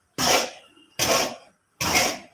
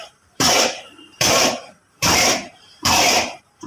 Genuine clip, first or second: first